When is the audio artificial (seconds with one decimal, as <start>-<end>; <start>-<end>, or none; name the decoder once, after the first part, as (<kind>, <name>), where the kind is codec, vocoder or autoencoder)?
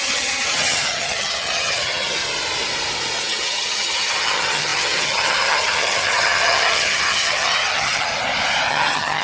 0.0-2.2 (vocoder, HiFi-GAN); 3.2-8.1; 8.7-9.2